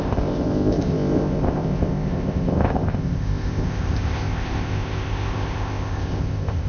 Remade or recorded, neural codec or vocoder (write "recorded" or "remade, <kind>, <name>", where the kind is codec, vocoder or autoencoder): remade, codec, ZipCodec